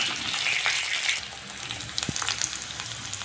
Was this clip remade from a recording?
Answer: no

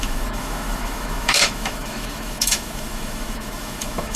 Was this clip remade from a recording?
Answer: yes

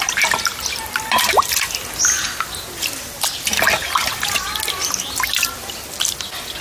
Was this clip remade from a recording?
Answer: no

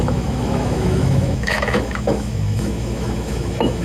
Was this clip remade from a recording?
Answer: yes